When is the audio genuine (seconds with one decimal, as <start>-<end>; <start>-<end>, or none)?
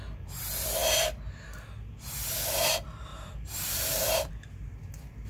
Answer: 0.0-3.1; 4.3-5.3